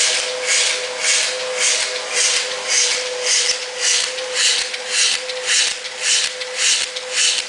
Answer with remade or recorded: recorded